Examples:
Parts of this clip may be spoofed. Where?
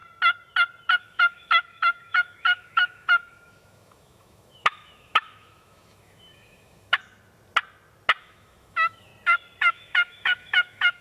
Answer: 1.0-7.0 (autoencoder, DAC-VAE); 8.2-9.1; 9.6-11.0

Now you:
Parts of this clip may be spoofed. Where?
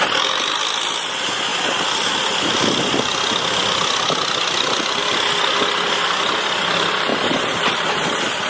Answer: 7.1-8.5 (vocoder, BigVGAN v2)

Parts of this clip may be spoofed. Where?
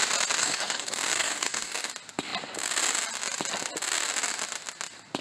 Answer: 0.4-1.9 (codec, DAC)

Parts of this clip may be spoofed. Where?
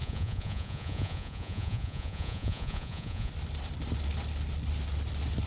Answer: 0.0-3.3 (vocoder, Vocos)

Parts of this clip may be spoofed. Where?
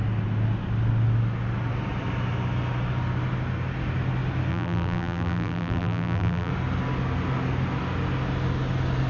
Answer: 4.5-6.5 (vocoder, BigVGAN v2)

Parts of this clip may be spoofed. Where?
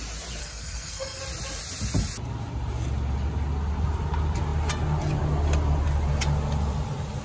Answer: 0.4-1.2 (codec, SNAC)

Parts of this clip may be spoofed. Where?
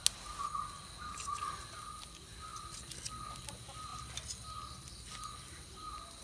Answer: none